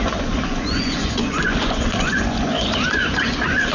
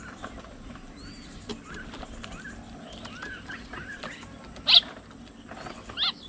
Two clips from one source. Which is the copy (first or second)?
first